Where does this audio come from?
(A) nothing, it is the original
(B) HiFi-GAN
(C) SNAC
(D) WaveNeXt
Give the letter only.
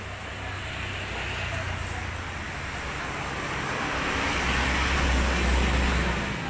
A